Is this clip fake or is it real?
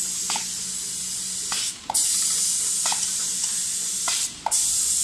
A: real